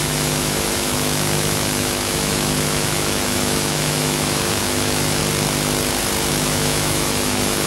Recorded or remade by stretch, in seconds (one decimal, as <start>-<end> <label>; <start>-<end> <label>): 0.0-5.2 remade; 5.2-6.3 recorded; 6.3-7.7 remade